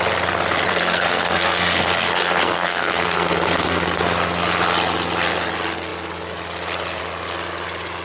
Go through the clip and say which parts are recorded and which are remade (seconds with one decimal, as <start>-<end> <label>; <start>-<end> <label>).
0.0-0.7 recorded; 0.7-4.0 remade; 4.0-8.0 recorded